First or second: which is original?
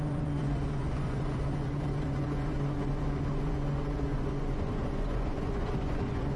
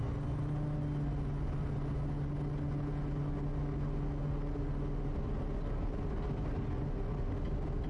second